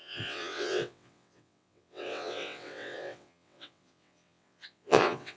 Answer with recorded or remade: remade